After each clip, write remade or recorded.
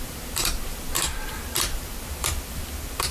remade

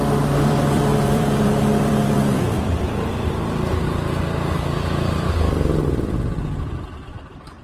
remade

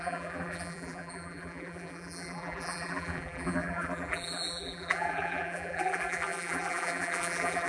remade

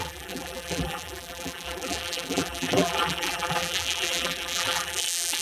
remade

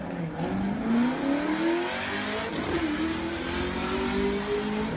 recorded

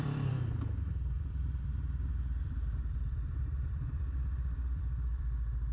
remade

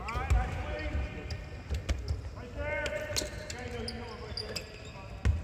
recorded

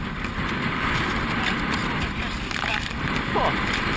remade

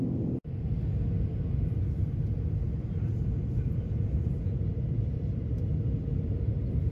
recorded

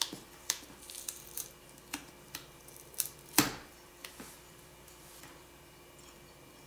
remade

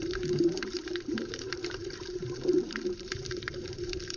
remade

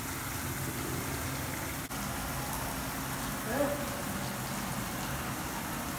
recorded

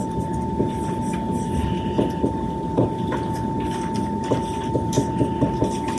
recorded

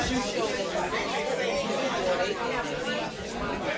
recorded